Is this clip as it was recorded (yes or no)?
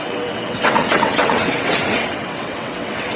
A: no